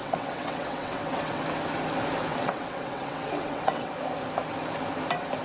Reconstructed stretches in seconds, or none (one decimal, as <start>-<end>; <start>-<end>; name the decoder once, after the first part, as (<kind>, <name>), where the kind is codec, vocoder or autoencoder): 0.0-1.4 (vocoder, WaveNeXt); 2.3-3.9